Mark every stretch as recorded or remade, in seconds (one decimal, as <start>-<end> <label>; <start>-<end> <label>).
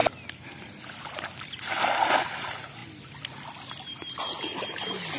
0.0-5.2 recorded